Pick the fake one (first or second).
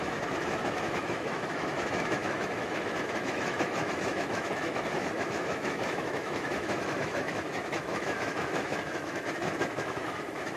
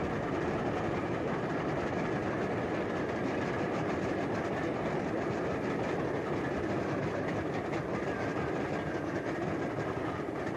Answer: first